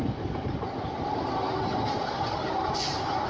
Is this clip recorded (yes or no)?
yes